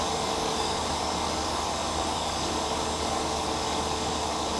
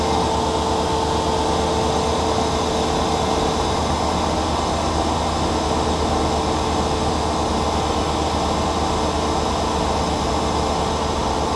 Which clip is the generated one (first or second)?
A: first